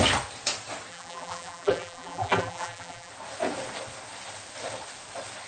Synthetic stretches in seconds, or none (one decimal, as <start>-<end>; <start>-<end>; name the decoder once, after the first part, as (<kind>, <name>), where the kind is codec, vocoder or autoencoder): 0.9-3.1 (vocoder, BigVGAN v2)